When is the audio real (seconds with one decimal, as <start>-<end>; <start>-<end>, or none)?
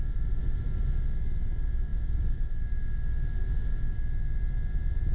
0.0-0.4; 1.0-5.1